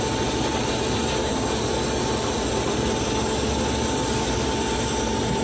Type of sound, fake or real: real